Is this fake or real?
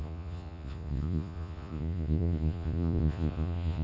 fake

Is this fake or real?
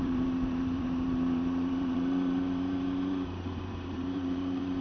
fake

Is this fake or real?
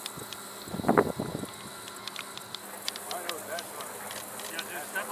real